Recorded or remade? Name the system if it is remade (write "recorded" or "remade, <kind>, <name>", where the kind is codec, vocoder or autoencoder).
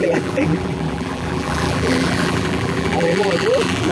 remade, vocoder, BigVGAN v2